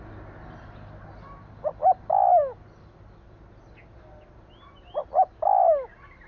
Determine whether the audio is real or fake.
real